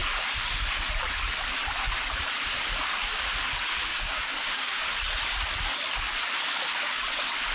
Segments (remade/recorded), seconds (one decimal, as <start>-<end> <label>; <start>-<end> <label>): 0.0-3.9 recorded; 3.9-4.8 remade; 4.8-7.5 recorded